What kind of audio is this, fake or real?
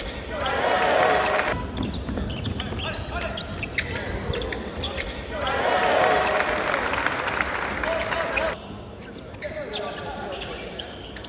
real